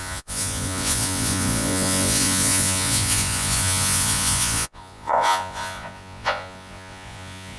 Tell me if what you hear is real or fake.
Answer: fake